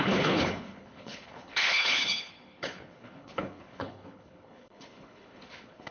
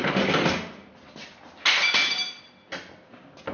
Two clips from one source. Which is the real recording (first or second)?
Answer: second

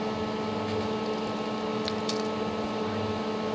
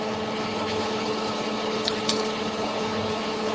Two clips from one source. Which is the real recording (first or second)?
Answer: first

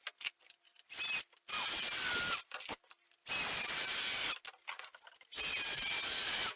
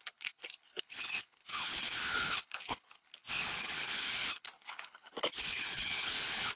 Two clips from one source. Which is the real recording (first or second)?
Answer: first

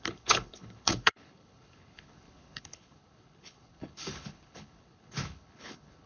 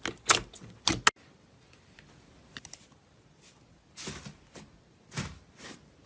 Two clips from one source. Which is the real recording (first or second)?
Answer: second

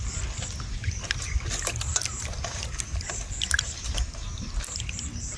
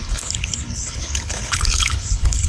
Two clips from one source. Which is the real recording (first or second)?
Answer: first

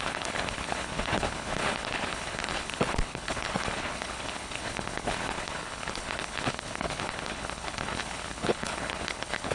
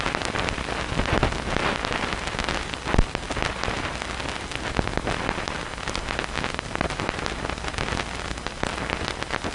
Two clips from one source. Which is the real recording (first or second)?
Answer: second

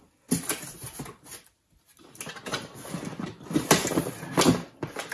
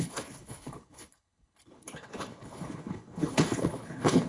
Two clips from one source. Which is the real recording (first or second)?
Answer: first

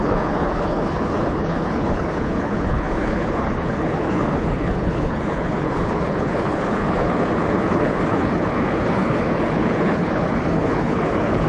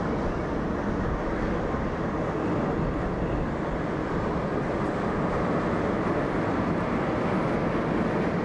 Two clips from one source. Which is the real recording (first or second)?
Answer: second